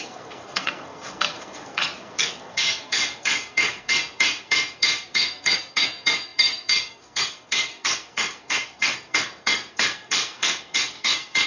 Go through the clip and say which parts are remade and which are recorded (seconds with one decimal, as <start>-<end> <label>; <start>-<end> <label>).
0.0-11.5 remade